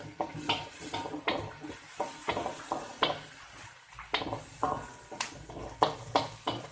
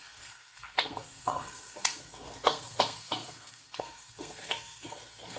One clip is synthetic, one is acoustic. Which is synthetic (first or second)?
second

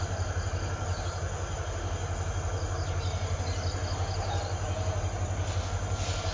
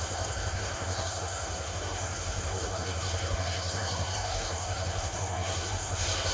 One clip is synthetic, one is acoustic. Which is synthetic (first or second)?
second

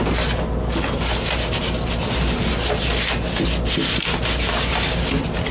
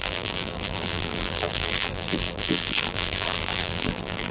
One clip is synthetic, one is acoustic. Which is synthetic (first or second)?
second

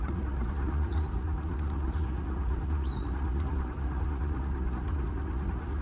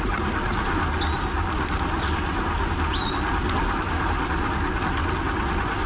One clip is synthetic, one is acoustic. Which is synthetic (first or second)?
first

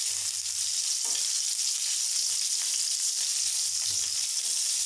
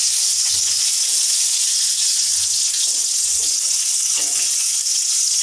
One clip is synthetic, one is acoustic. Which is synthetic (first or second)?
second